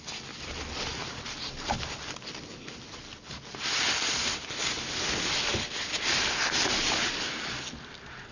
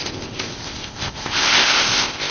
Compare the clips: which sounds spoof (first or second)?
second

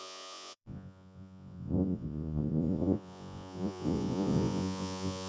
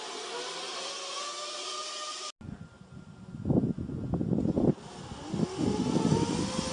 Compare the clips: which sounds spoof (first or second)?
first